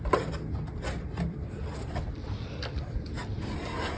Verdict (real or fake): real